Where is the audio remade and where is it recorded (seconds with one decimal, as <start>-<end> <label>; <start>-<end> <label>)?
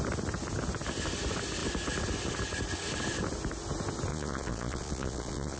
0.0-4.1 recorded; 4.1-5.6 remade